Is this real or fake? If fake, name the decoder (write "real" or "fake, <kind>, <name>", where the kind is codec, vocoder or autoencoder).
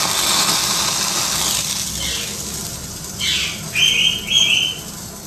real